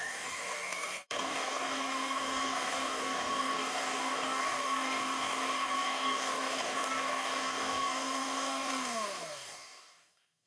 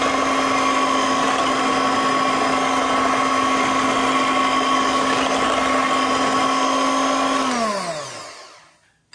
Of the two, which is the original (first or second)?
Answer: second